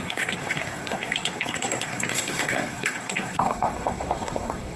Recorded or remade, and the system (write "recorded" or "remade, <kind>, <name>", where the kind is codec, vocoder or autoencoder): remade, codec, SNAC